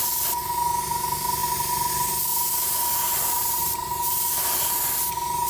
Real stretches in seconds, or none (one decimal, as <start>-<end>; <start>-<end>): 0.0-2.3; 4.7-5.5